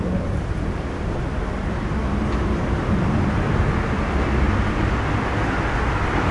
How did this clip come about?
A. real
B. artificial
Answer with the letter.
A